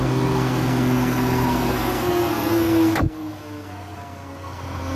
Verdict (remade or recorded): remade